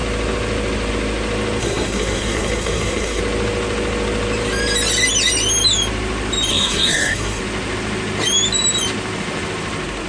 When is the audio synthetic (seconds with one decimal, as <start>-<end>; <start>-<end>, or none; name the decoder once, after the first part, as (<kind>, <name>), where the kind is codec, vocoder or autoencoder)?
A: 1.6-3.2 (codec, SNAC); 6.5-7.4